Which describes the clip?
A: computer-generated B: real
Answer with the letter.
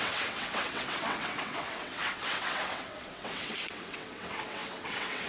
A